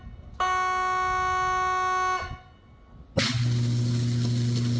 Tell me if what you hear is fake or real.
real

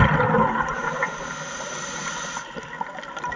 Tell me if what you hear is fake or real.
real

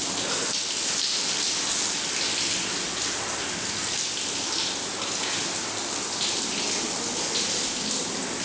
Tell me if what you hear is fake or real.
real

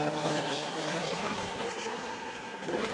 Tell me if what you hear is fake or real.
fake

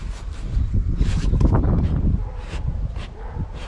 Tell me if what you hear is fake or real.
real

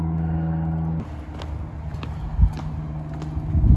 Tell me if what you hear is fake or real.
real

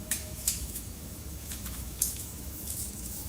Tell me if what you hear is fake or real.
fake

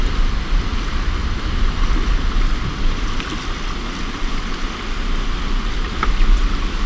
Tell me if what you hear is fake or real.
real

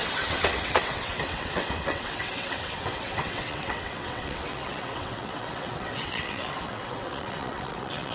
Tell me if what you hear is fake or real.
fake